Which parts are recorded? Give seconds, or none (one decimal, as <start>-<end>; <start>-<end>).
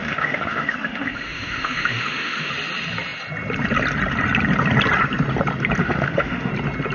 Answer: 2.5-5.8; 6.5-6.9